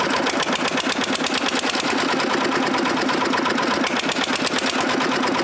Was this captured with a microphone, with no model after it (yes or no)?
yes